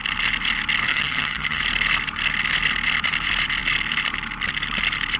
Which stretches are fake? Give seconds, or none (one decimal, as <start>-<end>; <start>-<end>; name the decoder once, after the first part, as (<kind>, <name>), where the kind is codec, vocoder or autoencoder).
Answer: 0.9-1.6 (vocoder, HiFi-GAN)